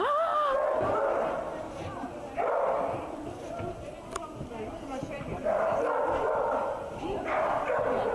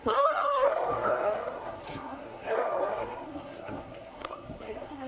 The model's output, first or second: second